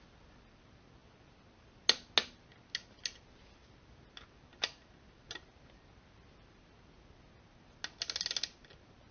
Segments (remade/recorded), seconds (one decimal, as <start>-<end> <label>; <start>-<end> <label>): 0.0-9.1 recorded